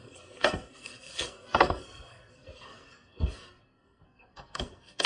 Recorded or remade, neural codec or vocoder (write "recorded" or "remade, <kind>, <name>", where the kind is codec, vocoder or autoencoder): remade, codec, SNAC